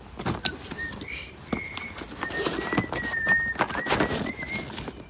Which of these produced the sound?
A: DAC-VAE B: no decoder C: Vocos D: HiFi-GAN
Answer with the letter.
B